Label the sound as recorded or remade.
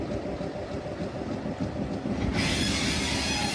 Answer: recorded